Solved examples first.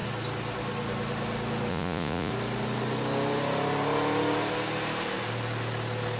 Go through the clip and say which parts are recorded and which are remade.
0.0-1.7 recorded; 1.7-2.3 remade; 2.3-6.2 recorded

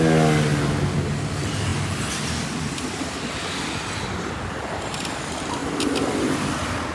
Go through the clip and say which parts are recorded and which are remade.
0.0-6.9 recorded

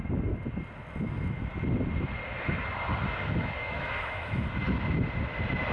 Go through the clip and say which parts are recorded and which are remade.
0.0-3.6 recorded; 3.6-4.4 remade; 4.4-5.7 recorded

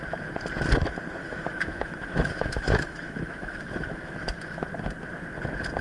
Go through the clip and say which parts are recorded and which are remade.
0.0-1.2 recorded; 1.2-4.7 remade; 4.7-5.8 recorded

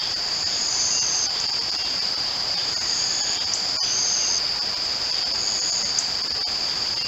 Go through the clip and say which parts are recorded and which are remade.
0.0-4.3 remade; 4.3-7.1 recorded

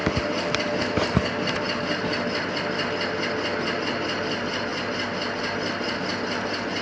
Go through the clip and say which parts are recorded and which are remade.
0.0-6.8 recorded

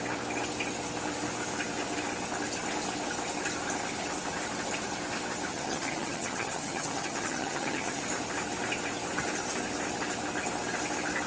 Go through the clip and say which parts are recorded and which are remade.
0.0-5.5 recorded; 5.5-8.0 remade; 8.0-11.3 recorded

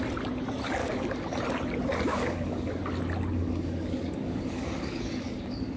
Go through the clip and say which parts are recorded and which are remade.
0.0-0.8 recorded; 0.8-1.4 remade; 1.4-2.1 recorded; 2.1-2.8 remade; 2.8-3.3 recorded; 3.3-5.8 remade